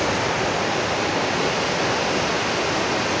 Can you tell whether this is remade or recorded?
recorded